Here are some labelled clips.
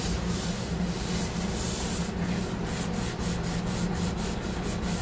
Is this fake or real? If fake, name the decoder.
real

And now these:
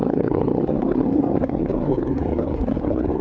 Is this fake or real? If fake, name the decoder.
fake, codec, SNAC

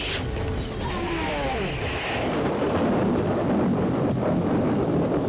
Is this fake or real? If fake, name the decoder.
real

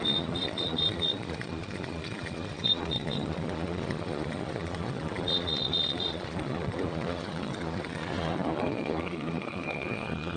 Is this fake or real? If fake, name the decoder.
fake, vocoder, Vocos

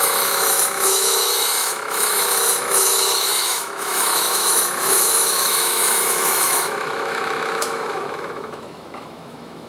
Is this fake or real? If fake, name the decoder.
fake, autoencoder, DAC-VAE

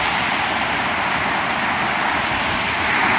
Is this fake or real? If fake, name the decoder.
real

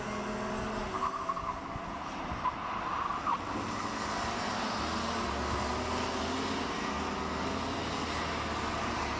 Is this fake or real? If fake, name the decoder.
real